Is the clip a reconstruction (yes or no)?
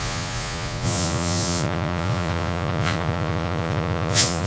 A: yes